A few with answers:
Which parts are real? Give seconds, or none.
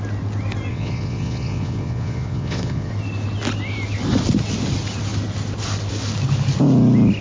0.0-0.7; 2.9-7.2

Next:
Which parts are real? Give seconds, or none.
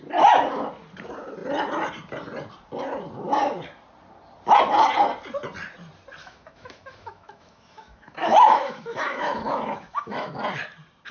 0.0-6.2; 10.3-11.1